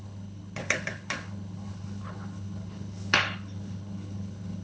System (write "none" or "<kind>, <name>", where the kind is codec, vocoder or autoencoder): codec, HILCodec